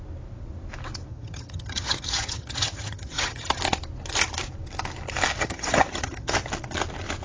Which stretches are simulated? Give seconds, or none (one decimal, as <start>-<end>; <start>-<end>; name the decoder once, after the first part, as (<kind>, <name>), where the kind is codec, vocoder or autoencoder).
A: 1.1-3.6 (vocoder, HiFi-GAN); 5.4-6.5